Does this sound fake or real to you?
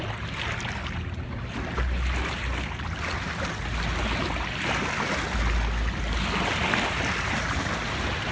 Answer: real